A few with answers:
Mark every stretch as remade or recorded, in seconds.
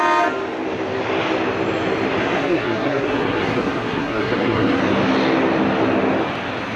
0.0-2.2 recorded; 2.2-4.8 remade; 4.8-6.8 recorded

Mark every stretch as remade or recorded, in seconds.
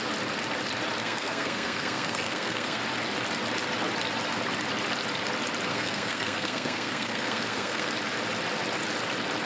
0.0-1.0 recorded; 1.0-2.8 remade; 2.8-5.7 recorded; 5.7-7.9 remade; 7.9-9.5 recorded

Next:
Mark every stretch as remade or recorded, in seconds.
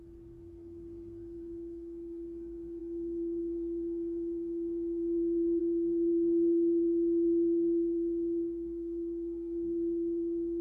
0.0-10.6 remade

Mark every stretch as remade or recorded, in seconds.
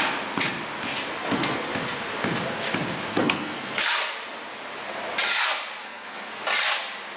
0.0-1.2 recorded; 1.2-1.7 remade; 1.7-3.1 recorded; 3.1-3.8 remade; 3.8-5.8 recorded; 5.8-6.4 remade; 6.4-7.2 recorded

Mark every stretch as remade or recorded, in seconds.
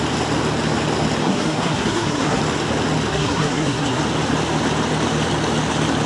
0.0-1.2 recorded; 1.2-2.4 remade; 2.4-3.1 recorded; 3.1-4.0 remade; 4.0-6.1 recorded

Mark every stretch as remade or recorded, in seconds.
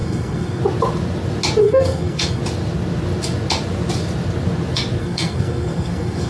0.0-0.6 remade; 0.6-1.6 recorded; 1.6-2.4 remade; 2.4-5.0 recorded; 5.0-6.3 remade